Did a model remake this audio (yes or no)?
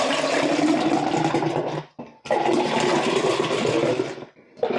no